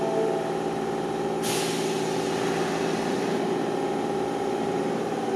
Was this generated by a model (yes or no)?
no